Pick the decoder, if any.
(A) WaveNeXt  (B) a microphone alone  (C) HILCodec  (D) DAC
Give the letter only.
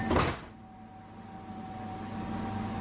B